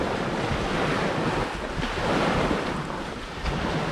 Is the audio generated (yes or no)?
no